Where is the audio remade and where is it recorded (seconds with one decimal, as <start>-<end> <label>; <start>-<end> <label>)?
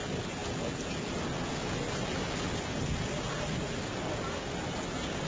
0.0-5.3 recorded